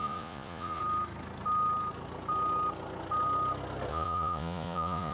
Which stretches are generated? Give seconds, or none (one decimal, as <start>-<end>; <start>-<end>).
0.0-0.8; 3.9-5.1